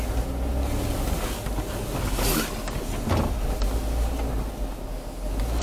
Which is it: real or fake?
real